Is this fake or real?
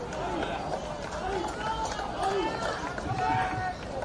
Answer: real